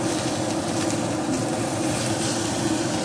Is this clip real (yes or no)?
yes